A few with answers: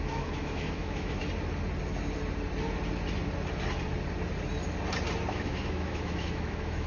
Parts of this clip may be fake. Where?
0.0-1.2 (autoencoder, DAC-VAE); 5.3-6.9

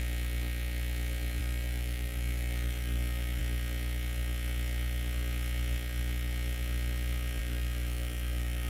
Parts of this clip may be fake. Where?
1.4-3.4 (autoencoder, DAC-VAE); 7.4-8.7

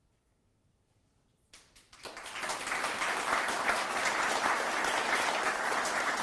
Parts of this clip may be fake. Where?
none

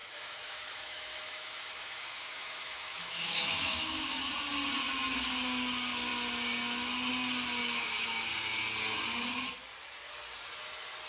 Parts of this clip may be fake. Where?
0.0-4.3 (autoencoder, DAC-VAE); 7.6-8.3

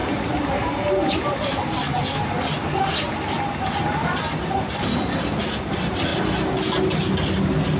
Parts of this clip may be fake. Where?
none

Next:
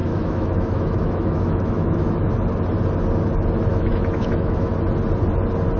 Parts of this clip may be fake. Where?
0.0-2.3 (autoencoder, DAC-VAE); 3.7-4.7

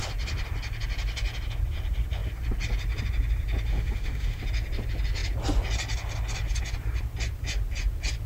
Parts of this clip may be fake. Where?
3.7-4.4 (autoencoder, DAC-VAE)